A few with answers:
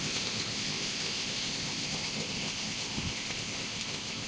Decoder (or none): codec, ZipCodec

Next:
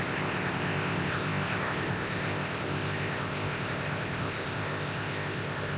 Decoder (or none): codec, ZipCodec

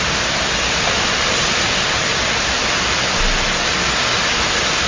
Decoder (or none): none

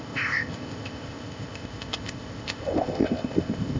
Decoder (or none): codec, ZipCodec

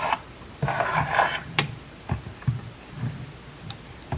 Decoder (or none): none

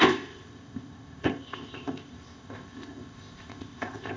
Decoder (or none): codec, ZipCodec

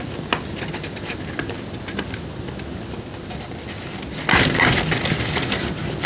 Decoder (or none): none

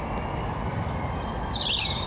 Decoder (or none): none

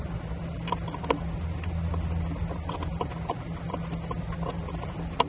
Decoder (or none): none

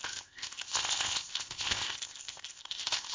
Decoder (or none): codec, ZipCodec